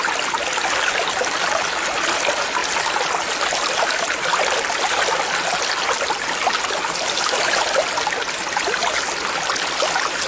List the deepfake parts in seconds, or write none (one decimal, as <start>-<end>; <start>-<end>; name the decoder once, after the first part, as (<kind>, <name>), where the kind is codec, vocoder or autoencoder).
none